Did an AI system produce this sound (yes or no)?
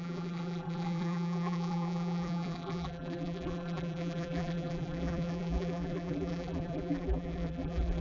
yes